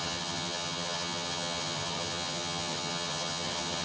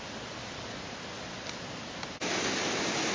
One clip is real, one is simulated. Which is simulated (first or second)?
first